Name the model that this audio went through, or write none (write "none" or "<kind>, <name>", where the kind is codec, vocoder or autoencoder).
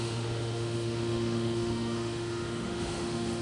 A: autoencoder, DAC-VAE